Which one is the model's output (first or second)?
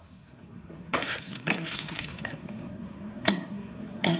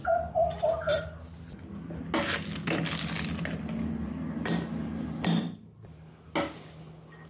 first